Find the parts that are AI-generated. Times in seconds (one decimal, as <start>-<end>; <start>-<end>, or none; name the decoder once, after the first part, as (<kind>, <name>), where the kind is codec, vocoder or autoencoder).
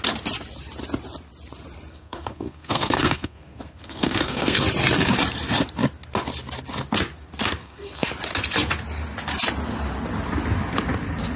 1.9-4.6 (codec, SNAC); 7.6-8.1